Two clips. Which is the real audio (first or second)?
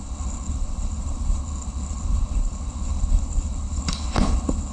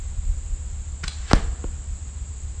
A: second